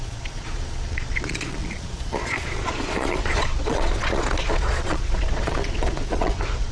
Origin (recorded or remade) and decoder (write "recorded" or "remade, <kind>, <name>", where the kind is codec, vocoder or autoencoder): remade, vocoder, Vocos